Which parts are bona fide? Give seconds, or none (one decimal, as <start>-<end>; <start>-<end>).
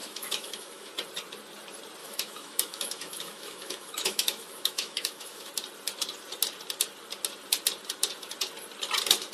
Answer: 0.9-2.0; 5.5-9.3